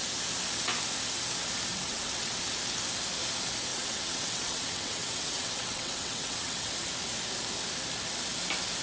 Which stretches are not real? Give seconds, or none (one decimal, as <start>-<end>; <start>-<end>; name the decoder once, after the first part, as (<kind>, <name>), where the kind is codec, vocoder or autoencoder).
1.7-2.4 (vocoder, WaveNeXt); 3.7-6.7